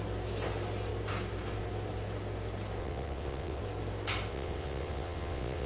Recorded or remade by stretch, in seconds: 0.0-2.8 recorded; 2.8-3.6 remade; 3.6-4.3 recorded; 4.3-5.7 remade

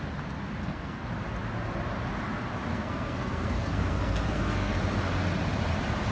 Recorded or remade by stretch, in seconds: 0.0-0.6 recorded; 0.6-1.1 remade; 1.1-2.7 recorded; 2.7-4.8 remade; 4.8-6.1 recorded